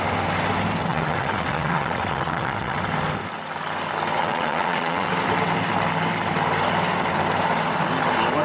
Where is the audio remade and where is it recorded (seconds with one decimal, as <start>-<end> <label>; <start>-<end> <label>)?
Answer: 0.0-0.9 recorded; 0.9-2.8 remade; 2.8-4.2 recorded; 4.2-5.1 remade; 5.1-8.4 recorded